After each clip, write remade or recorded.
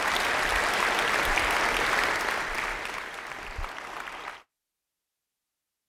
recorded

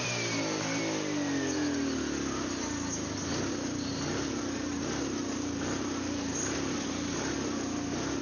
recorded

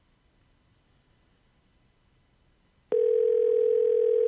recorded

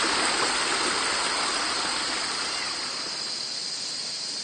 recorded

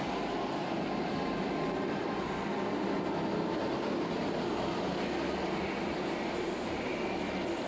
recorded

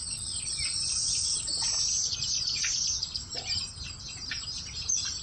recorded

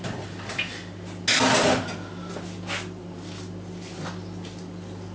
recorded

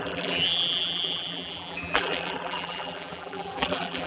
remade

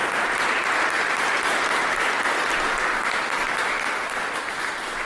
recorded